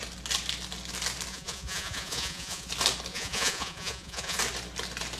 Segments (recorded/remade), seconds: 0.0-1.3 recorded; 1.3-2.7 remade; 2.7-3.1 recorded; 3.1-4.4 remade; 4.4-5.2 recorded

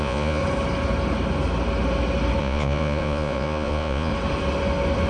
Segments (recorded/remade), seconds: 0.0-0.4 remade; 0.4-2.4 recorded; 2.4-4.1 remade; 4.1-5.1 recorded

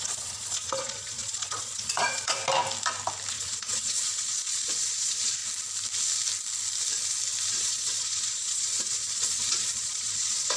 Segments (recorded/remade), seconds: 0.0-2.4 remade; 2.4-3.3 recorded; 3.3-5.4 remade; 5.4-7.5 recorded; 7.5-10.6 remade

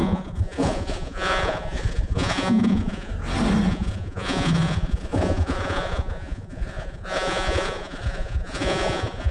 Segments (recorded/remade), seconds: 0.0-3.1 remade; 3.1-3.7 recorded; 3.7-9.3 remade